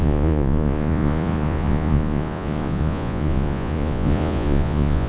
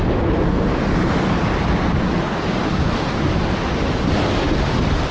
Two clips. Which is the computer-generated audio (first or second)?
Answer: first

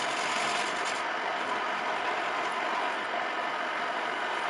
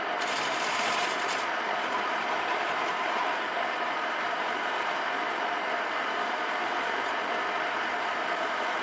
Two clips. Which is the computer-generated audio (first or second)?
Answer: second